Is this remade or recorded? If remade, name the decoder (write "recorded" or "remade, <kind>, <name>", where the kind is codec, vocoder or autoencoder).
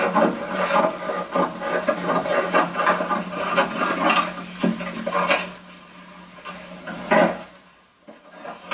recorded